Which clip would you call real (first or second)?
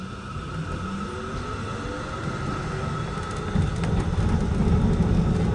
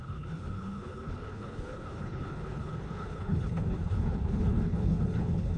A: first